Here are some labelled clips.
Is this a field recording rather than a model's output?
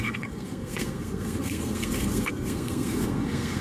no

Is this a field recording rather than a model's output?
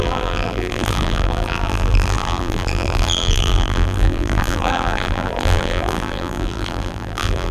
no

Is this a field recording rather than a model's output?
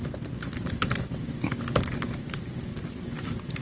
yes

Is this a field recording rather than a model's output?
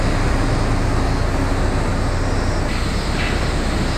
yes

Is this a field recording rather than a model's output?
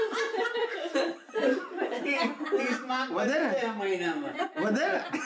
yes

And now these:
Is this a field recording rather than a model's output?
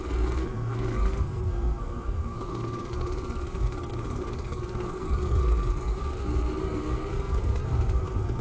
no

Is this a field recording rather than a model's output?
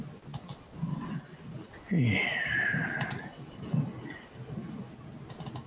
yes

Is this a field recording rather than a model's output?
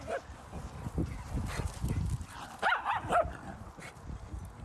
yes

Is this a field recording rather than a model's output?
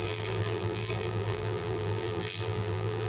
no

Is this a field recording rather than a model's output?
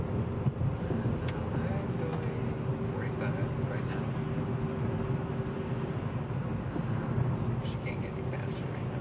yes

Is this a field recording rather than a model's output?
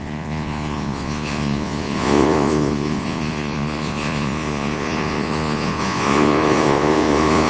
no